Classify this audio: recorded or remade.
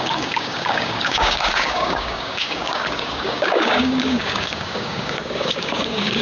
remade